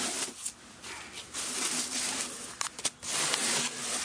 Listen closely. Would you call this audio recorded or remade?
recorded